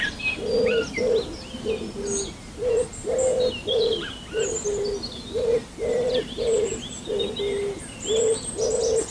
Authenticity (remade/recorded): recorded